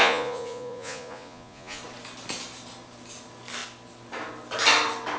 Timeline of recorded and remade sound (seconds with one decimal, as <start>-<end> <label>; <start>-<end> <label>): 0.0-1.8 remade; 1.8-5.2 recorded